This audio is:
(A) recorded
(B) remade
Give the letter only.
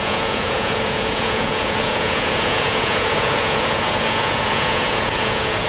B